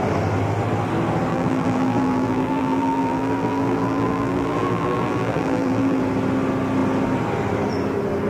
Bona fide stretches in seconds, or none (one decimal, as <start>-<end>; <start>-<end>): 0.0-1.3; 6.0-8.3